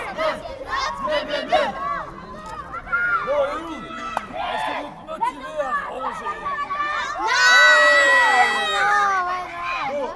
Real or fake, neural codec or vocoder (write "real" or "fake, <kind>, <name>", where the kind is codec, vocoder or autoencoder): real